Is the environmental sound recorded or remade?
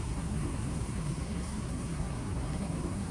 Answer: remade